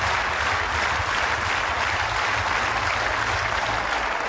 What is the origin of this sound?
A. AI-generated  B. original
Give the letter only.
B